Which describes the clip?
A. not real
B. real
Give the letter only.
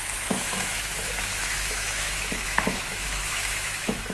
A